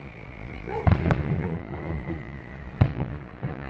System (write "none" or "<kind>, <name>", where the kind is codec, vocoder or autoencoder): vocoder, Vocos